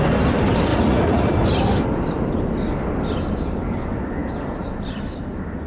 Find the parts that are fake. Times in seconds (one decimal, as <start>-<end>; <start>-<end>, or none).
0.7-1.3

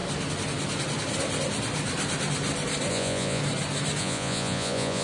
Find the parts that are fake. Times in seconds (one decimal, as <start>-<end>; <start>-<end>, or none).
2.9-3.4; 4.0-5.0